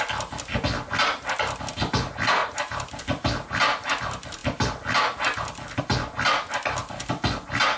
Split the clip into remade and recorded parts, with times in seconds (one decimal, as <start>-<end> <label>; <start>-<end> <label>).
0.0-2.4 recorded; 2.4-3.0 remade; 3.0-7.8 recorded